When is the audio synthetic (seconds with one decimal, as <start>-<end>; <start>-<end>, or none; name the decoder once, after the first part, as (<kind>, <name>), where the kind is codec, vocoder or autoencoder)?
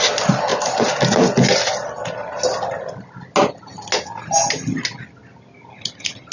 none